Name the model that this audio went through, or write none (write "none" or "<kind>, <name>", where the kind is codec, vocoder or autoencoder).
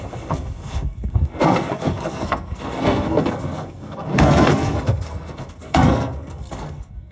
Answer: codec, SNAC